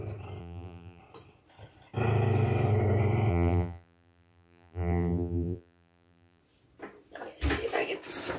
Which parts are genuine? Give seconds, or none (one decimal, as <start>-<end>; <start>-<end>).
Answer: 0.0-0.4; 1.0-3.3; 6.4-8.4